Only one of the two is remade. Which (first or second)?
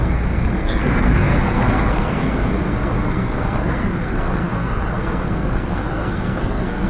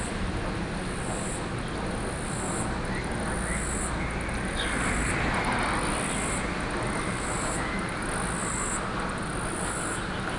first